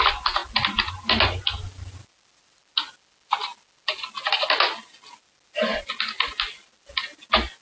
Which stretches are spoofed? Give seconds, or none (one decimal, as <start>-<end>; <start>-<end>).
none